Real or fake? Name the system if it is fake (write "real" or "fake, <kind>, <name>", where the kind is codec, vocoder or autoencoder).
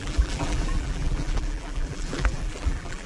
fake, vocoder, BigVGAN v2